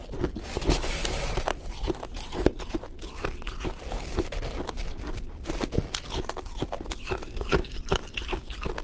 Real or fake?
real